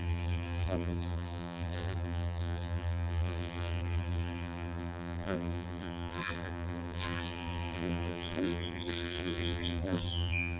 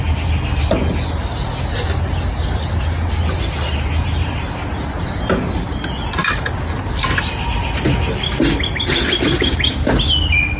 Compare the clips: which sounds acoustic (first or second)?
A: second